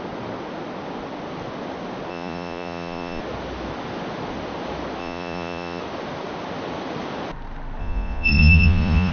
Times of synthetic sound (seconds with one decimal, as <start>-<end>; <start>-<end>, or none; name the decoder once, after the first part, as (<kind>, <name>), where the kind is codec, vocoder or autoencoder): 2.1-3.2 (vocoder, Vocos); 5.0-5.8; 7.8-9.1